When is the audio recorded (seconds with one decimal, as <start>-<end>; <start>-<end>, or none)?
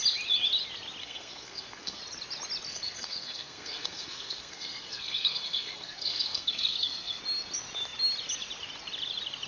0.0-1.0; 2.0-2.7; 7.2-9.5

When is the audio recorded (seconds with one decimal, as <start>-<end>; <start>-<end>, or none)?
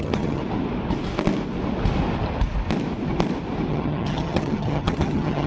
0.4-3.7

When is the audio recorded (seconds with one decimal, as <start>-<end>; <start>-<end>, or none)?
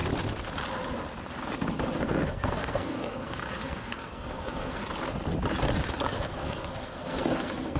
0.0-2.0; 4.8-6.0